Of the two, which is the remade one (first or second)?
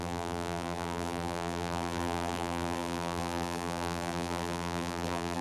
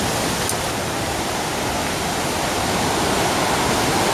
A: first